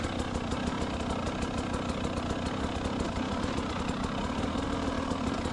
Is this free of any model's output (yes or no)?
yes